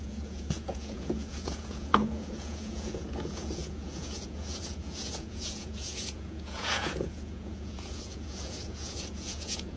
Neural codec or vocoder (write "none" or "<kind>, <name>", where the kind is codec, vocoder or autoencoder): vocoder, Vocos